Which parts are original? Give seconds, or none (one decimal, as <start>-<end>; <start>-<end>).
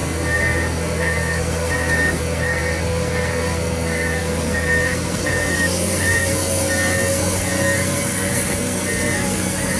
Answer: none